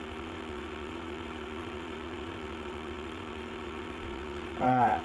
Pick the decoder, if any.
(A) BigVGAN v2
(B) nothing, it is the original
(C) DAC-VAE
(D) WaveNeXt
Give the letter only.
D